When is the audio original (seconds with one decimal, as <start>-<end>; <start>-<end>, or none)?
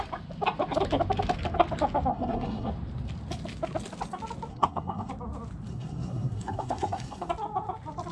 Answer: 0.0-2.1; 2.7-4.5; 5.1-5.7; 7.3-8.1